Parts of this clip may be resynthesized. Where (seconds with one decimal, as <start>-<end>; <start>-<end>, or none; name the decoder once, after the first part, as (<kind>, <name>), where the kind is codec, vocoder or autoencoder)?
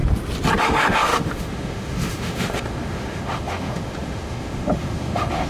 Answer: 0.6-5.5 (autoencoder, DAC-VAE)